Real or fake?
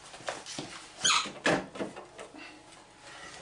real